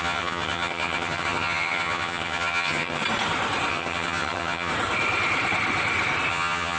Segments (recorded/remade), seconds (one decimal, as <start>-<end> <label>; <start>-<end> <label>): 0.0-3.0 remade; 3.0-3.7 recorded; 3.7-4.7 remade; 4.7-6.3 recorded; 6.3-6.8 remade